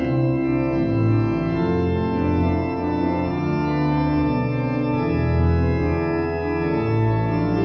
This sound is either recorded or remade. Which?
recorded